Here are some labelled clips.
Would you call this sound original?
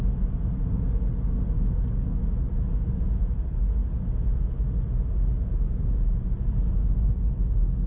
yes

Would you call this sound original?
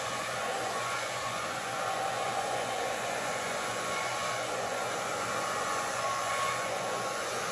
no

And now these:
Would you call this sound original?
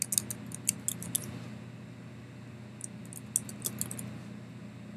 yes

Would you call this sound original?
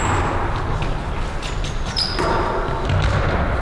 yes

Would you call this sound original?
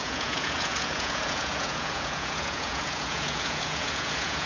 no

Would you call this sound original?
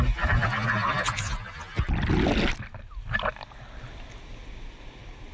yes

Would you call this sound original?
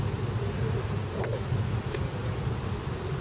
yes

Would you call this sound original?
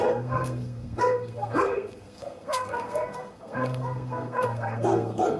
no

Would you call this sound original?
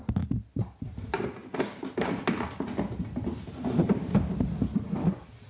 yes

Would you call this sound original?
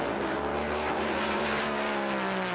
yes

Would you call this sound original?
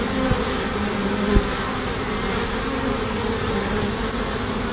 yes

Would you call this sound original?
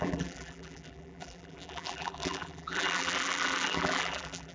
no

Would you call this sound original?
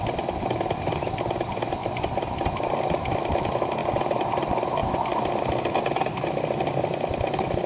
yes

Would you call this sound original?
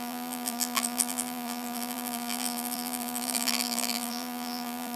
no